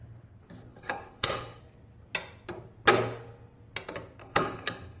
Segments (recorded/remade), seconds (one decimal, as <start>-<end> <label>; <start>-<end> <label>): 0.0-0.7 recorded; 0.7-1.6 remade; 1.6-4.2 recorded; 4.2-5.0 remade